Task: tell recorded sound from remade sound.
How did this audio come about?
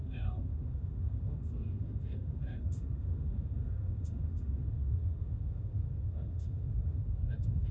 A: remade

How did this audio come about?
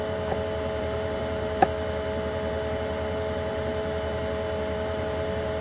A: remade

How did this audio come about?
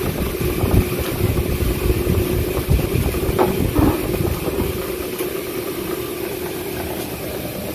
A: recorded